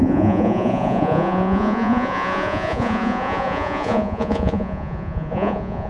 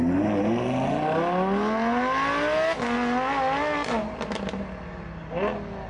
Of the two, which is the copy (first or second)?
first